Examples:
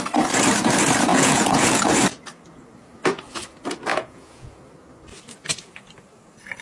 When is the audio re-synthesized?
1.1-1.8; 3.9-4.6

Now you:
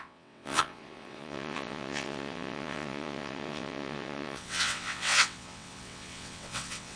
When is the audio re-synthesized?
0.0-7.0